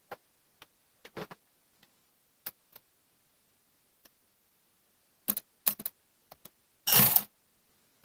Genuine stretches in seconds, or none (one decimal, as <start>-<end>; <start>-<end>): 0.0-2.0; 2.6-8.0